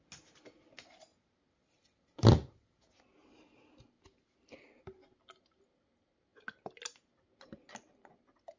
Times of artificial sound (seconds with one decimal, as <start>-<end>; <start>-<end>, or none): none